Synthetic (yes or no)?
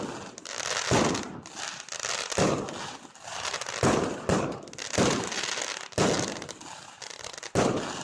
no